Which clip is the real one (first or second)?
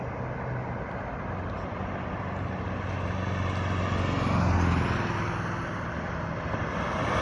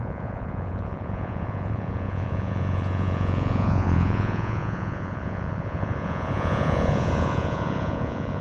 first